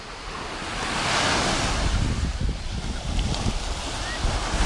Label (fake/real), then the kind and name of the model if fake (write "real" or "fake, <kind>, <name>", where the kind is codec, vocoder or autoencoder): real